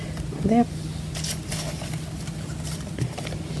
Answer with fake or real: real